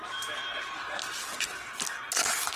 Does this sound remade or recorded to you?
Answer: recorded